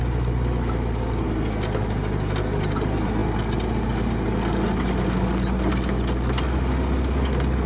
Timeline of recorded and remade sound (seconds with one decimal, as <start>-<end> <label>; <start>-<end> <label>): 0.0-7.7 recorded